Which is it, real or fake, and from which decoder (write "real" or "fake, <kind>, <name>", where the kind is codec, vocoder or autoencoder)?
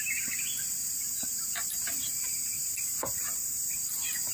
fake, vocoder, BigVGAN v2